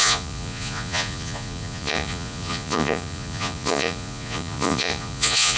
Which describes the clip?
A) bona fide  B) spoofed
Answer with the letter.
B